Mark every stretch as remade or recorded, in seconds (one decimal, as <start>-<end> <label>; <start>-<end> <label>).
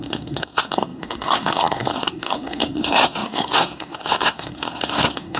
0.0-5.4 remade